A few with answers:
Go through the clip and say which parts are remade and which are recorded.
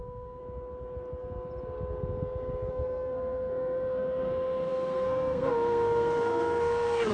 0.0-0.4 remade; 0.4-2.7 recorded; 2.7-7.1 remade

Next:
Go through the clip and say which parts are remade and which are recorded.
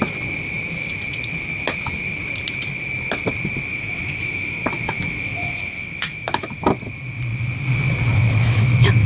0.0-3.7 recorded; 3.7-6.7 remade; 6.7-8.1 recorded; 8.1-9.1 remade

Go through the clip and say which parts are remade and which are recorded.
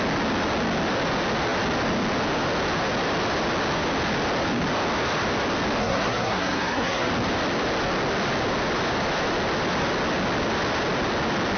0.0-5.8 recorded; 5.8-7.1 remade; 7.1-11.6 recorded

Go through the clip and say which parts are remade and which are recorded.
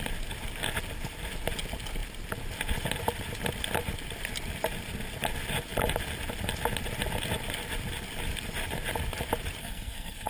0.0-9.6 recorded; 9.6-10.3 remade